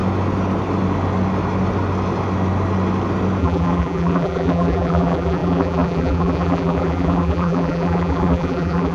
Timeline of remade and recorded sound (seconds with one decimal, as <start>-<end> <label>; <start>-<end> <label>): 0.0-3.4 recorded; 3.4-8.9 remade